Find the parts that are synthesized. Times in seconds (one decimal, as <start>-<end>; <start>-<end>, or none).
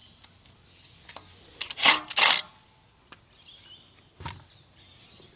none